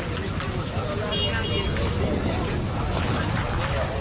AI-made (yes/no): no